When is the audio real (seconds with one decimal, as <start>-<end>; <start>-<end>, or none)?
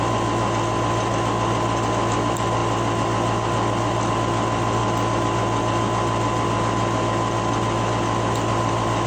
0.0-9.1